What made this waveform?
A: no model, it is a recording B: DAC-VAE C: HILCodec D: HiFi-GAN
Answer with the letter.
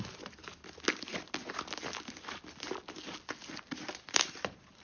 A